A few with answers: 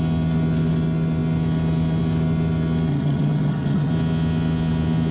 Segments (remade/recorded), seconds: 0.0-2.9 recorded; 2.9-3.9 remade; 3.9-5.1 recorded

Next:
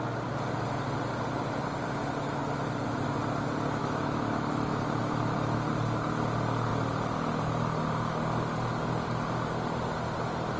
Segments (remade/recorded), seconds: 0.0-3.8 recorded; 3.8-5.0 remade; 5.0-10.6 recorded

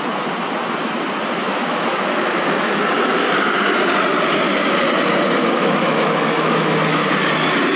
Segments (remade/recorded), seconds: 0.0-1.4 recorded; 1.4-2.7 remade; 2.7-5.4 recorded; 5.4-7.1 remade; 7.1-7.8 recorded

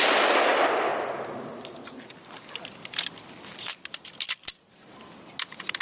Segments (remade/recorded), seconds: 0.0-5.8 recorded

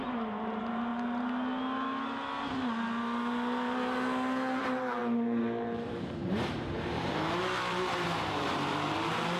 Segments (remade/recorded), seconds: 0.0-0.9 remade; 0.9-4.6 recorded; 4.6-9.4 remade

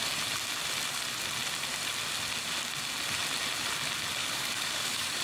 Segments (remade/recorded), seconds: 0.0-4.2 recorded; 4.2-5.2 remade

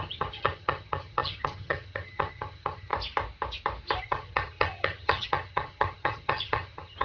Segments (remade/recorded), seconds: 0.0-2.9 remade; 2.9-4.0 recorded; 4.0-7.0 remade

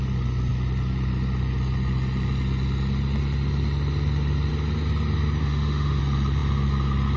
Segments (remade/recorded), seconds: 0.0-5.4 recorded; 5.4-6.0 remade; 6.0-7.2 recorded